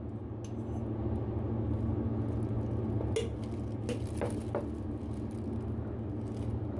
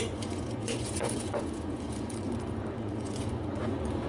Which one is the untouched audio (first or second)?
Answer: first